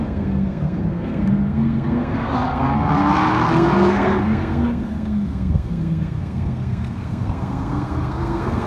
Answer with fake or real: fake